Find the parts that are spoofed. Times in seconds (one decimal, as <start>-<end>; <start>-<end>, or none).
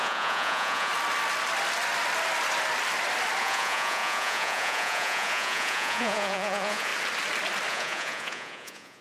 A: 0.0-0.9; 3.4-6.9; 7.7-9.0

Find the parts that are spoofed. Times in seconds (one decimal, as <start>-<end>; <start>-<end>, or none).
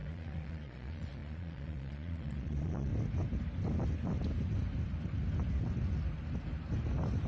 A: 0.0-2.9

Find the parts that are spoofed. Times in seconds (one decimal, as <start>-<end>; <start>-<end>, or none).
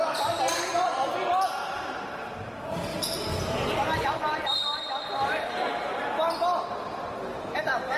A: none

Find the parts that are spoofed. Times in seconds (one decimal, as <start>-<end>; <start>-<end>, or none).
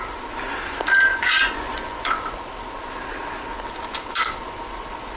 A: 1.1-2.4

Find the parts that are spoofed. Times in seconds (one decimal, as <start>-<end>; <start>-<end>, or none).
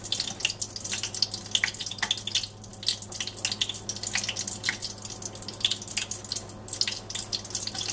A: none